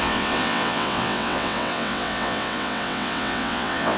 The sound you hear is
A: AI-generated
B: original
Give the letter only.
A